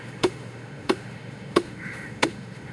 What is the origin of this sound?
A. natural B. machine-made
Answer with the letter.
B